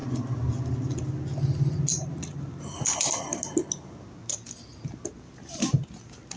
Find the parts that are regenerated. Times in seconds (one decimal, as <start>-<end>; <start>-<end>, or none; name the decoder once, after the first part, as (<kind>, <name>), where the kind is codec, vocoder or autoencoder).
none